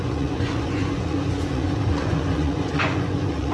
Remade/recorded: remade